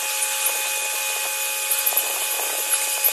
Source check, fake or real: real